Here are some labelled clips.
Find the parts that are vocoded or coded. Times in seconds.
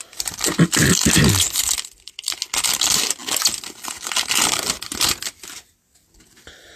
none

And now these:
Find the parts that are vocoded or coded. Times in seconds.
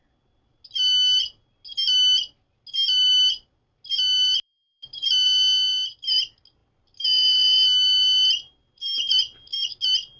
none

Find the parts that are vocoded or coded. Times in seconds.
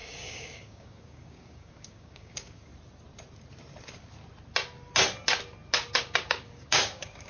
0.0-2.7 (codec, DAC); 6.0-7.3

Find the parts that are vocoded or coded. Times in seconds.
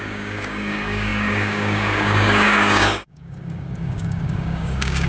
0.0-5.1 (codec, DAC)